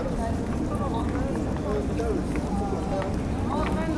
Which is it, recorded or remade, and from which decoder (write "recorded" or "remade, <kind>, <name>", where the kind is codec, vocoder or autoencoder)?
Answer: recorded